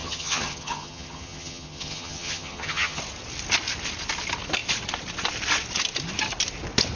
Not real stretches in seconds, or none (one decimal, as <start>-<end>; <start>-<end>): 0.0-3.0